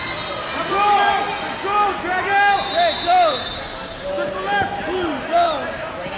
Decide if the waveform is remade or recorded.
recorded